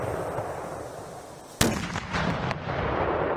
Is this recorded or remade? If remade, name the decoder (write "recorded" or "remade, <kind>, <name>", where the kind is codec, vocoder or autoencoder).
recorded